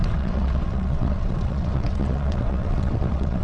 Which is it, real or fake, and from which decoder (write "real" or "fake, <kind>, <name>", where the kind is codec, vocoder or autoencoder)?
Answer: fake, vocoder, WaveNeXt